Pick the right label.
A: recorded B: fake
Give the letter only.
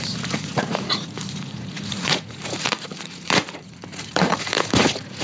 B